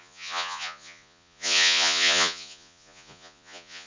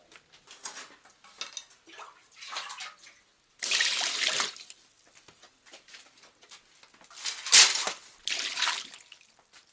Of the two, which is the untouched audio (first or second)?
second